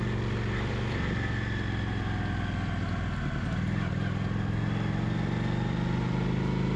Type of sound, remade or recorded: recorded